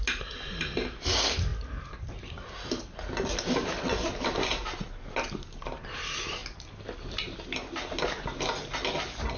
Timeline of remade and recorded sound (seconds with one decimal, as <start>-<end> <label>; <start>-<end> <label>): 0.0-9.4 recorded